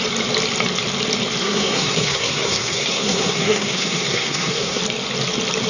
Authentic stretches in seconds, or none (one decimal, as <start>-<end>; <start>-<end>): 0.0-1.4; 4.8-5.7